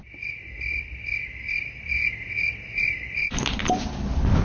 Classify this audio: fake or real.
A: real